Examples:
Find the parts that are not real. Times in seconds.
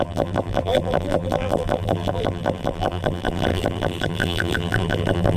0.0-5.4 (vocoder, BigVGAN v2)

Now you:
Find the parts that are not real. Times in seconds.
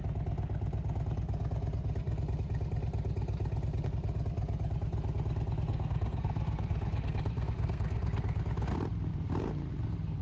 5.7-8.4 (codec, SNAC)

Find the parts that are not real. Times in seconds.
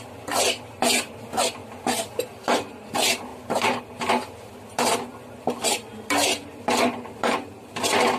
none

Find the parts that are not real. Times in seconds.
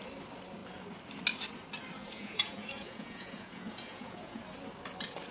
2.0-4.4 (vocoder, Vocos)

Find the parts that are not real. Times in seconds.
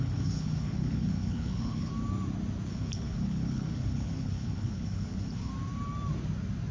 0.0-1.9 (codec, HILCodec); 2.7-5.5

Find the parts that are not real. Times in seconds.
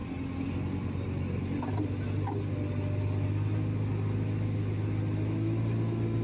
none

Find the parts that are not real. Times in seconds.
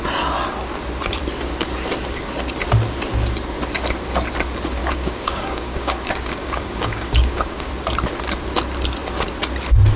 4.8-7.7 (codec, DAC)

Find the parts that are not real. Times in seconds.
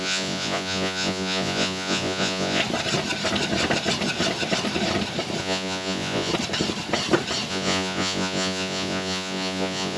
0.0-2.6 (vocoder, Vocos); 5.4-6.3; 7.5-10.0